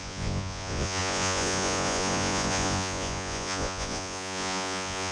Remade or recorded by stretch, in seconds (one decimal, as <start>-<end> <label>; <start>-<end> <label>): 0.0-5.1 remade